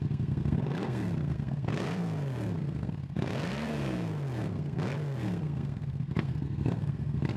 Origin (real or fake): fake